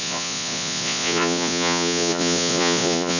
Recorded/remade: remade